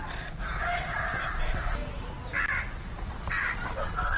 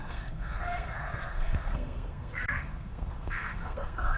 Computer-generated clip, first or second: second